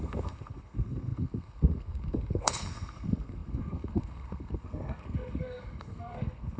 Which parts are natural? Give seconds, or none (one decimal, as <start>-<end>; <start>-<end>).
none